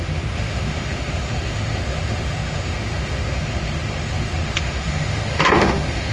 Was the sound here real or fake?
fake